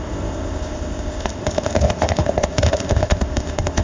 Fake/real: fake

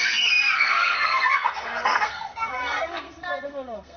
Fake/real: fake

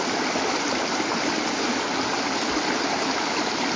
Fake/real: real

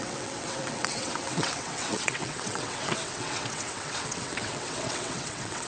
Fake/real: fake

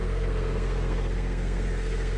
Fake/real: fake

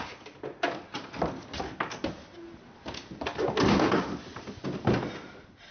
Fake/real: real